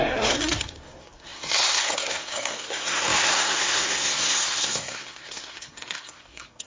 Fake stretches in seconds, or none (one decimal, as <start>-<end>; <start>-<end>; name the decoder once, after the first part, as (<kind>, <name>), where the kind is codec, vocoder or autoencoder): 0.0-6.7 (codec, SNAC)